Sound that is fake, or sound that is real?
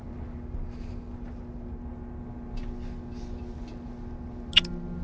real